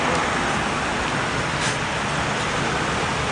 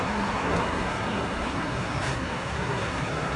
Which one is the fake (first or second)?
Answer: second